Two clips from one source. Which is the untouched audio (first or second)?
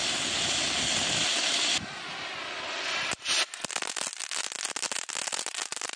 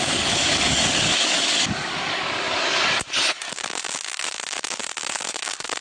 first